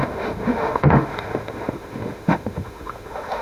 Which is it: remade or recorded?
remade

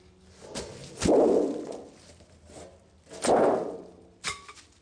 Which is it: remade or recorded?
recorded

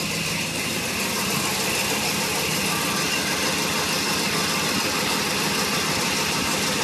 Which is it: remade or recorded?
recorded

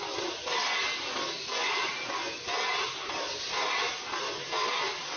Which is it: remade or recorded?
recorded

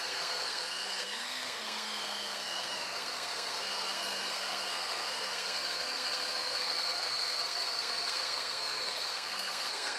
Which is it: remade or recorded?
remade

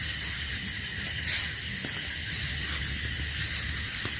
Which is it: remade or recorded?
recorded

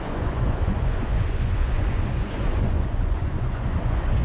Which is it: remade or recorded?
remade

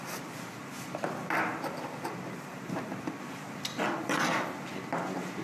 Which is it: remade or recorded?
remade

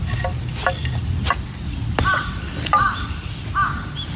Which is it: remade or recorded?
remade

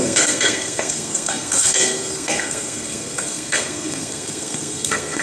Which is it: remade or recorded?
remade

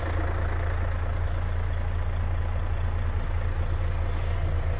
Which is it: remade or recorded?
recorded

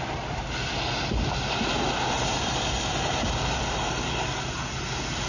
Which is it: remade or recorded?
recorded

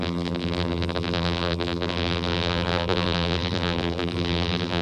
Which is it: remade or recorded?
remade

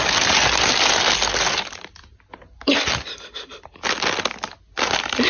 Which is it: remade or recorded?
recorded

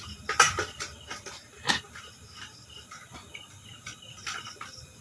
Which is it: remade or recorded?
recorded